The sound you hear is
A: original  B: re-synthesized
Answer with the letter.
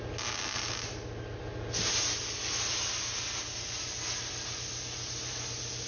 A